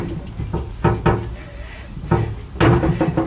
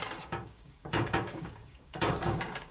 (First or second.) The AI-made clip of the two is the second